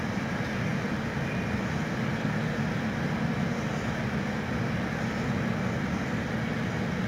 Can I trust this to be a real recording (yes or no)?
yes